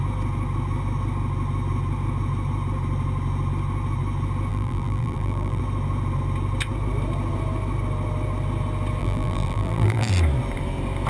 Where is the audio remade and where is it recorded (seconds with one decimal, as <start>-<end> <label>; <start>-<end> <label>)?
0.0-4.5 recorded; 4.5-5.6 remade; 5.6-9.0 recorded; 9.0-10.1 remade; 10.1-11.1 recorded